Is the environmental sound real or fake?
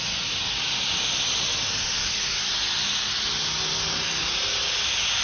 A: real